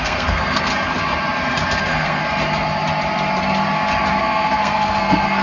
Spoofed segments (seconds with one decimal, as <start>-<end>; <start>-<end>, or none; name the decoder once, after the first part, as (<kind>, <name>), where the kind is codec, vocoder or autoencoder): 0.0-0.7 (codec, SNAC); 1.8-2.2; 4.2-5.4